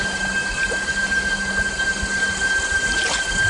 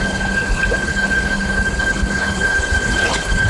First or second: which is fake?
second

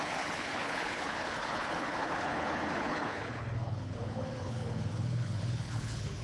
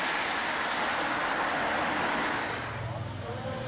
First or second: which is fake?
first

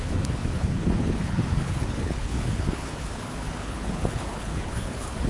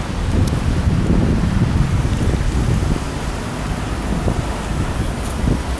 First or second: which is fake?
first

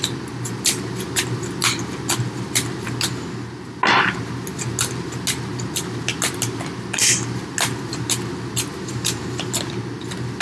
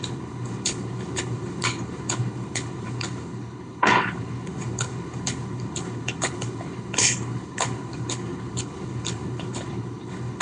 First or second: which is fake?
second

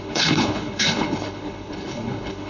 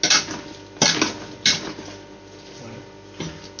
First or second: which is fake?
first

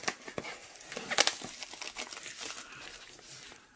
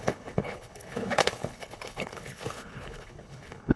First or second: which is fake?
second